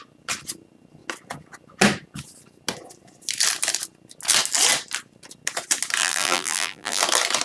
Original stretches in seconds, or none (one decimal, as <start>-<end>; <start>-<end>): 0.0-6.0; 7.0-7.4